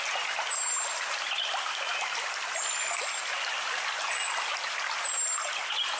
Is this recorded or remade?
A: recorded